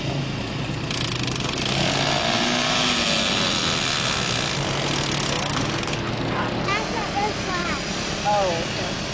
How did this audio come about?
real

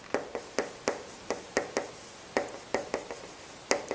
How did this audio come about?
real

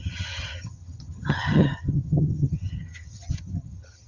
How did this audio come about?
fake